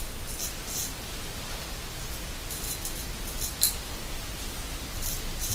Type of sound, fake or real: real